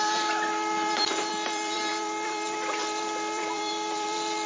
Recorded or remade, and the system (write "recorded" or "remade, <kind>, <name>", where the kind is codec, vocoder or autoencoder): remade, vocoder, BigVGAN v2